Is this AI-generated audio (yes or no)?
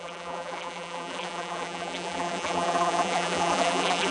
yes